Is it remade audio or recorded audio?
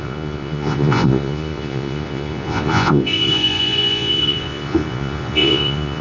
remade